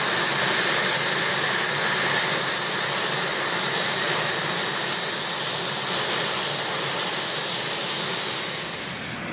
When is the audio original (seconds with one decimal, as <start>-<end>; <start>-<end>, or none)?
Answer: 0.0-9.3